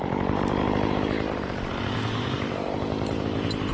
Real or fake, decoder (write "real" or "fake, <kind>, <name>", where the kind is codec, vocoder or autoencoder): fake, vocoder, BigVGAN v2